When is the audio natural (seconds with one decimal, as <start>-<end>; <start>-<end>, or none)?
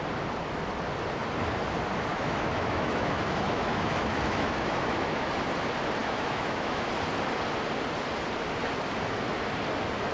0.0-2.1; 5.3-6.0; 6.9-10.1